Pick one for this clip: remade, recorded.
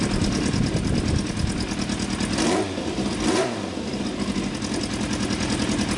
recorded